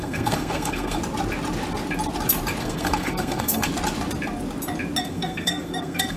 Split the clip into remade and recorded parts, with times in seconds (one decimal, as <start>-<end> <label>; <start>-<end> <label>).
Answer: 0.0-1.0 remade; 1.0-2.6 recorded; 2.6-3.7 remade; 3.7-5.0 recorded; 5.0-6.2 remade